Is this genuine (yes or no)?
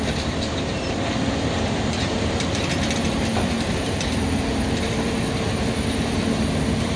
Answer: no